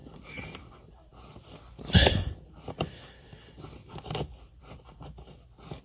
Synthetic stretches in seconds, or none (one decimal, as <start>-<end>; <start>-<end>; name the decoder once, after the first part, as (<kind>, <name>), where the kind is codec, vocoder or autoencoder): none